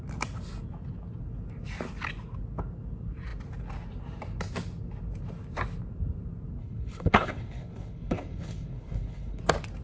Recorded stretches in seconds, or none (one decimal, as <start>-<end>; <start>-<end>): 0.0-6.6; 9.4-9.8